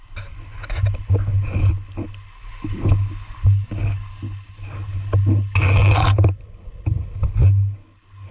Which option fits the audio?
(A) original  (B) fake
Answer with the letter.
A